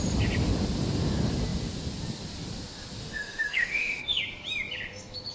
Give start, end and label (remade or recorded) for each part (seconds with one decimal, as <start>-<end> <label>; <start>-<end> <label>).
0.0-3.0 recorded; 3.0-4.2 remade; 4.2-5.3 recorded